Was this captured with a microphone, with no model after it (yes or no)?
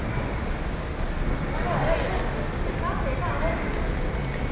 yes